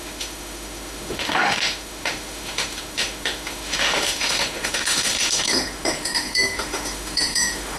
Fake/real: fake